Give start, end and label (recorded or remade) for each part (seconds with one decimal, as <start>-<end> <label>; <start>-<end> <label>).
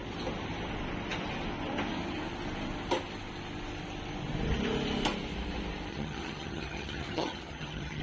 0.0-5.9 recorded; 5.9-8.0 remade